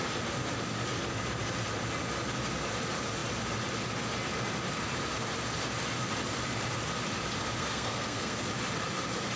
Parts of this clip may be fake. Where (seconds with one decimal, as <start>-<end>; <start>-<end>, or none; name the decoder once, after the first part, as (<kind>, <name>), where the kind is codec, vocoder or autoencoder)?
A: 7.6-8.5 (codec, SNAC)